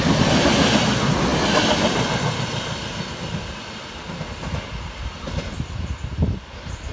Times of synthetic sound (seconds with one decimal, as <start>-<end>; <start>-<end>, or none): none